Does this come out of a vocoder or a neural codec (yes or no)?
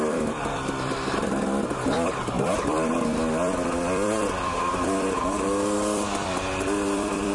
yes